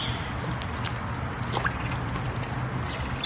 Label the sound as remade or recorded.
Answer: recorded